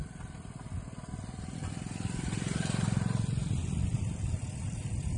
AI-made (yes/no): yes